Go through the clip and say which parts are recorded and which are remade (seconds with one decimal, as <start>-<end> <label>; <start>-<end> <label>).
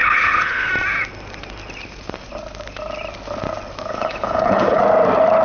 0.0-0.7 remade; 0.7-3.9 recorded; 3.9-4.8 remade; 4.8-5.4 recorded